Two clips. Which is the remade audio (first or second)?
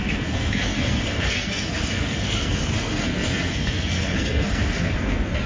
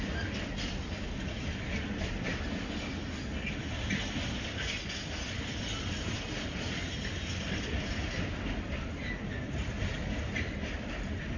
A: first